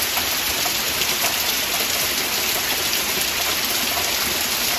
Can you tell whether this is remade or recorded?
recorded